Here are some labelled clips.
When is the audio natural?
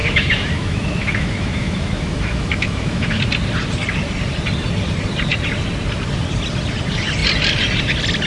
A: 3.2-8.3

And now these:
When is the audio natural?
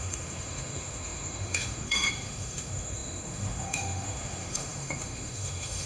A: none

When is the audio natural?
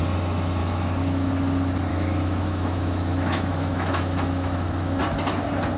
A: 0.0-0.6; 1.3-1.9; 5.0-5.8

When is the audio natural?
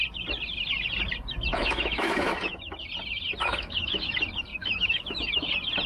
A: 0.0-1.5; 2.6-3.5; 4.1-4.5; 5.5-5.9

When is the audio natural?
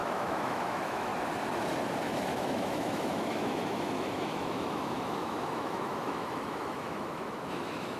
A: 1.1-2.0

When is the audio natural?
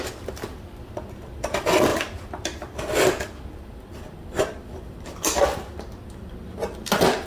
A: 0.0-7.3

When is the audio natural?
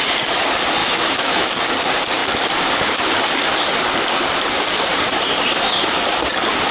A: 0.0-0.8; 1.6-6.7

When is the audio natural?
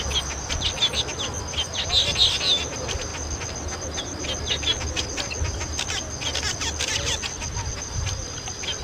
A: 0.0-8.8